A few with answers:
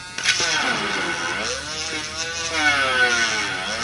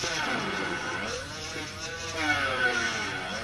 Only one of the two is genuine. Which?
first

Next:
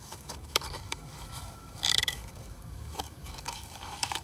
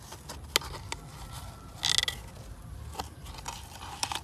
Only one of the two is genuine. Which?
second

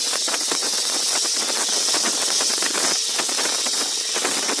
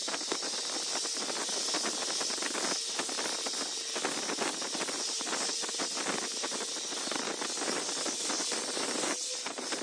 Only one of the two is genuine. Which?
second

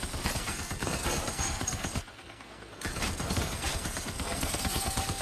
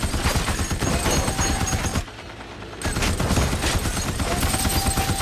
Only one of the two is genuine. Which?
second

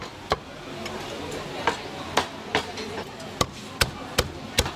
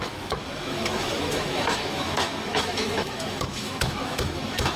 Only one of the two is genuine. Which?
first